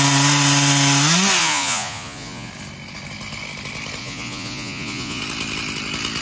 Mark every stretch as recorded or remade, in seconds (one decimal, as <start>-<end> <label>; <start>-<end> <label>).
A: 0.0-1.4 recorded; 1.4-2.5 remade; 2.5-4.0 recorded; 4.0-5.2 remade; 5.2-6.2 recorded